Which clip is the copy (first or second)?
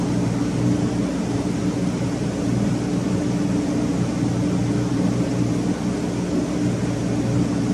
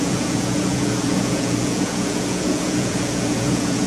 second